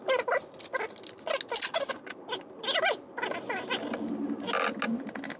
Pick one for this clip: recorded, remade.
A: recorded